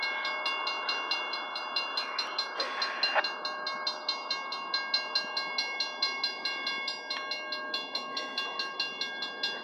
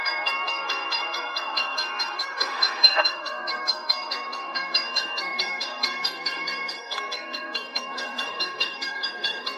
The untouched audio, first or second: first